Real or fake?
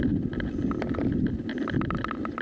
real